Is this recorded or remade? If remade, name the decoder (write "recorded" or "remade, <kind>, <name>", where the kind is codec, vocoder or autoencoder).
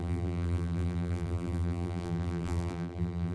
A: remade, vocoder, BigVGAN v2